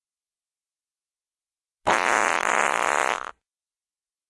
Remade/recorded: recorded